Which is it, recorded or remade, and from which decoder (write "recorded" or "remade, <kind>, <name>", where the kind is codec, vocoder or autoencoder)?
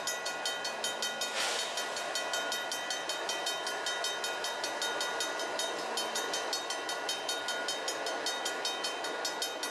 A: recorded